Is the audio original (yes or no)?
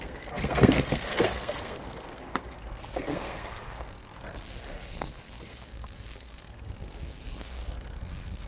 no